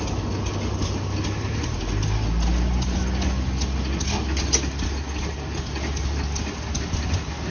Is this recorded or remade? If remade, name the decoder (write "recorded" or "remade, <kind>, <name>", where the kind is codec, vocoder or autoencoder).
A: recorded